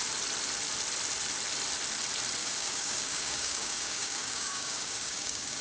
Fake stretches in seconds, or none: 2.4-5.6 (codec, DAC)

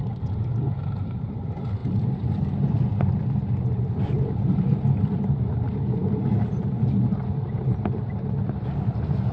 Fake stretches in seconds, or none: none

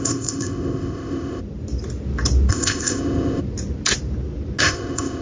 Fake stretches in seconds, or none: 0.0-1.4 (codec, ZipCodec); 2.5-3.4; 4.6-5.2

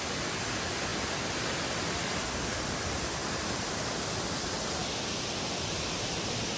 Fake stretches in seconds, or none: none

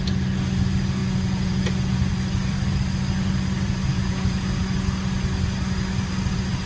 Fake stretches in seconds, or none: 1.0-2.1 (vocoder, Vocos); 3.9-4.6

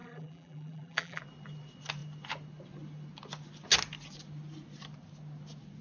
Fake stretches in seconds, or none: 0.0-1.2 (vocoder, BigVGAN v2)